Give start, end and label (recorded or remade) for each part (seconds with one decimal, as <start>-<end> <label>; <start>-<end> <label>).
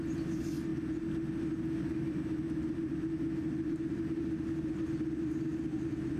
0.0-6.2 recorded